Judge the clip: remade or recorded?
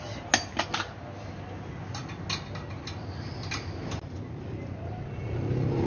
recorded